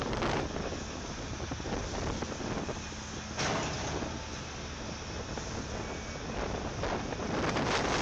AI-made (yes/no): no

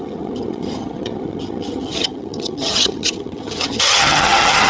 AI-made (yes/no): yes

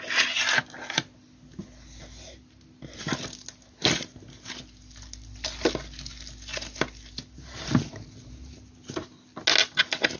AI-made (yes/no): no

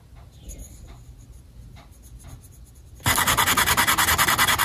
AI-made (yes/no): no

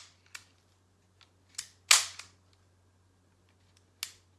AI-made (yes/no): no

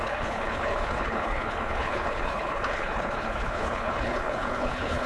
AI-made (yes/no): yes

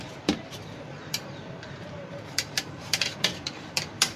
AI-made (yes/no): yes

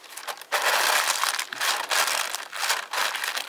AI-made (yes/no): no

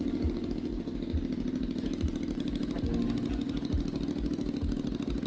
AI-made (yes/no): no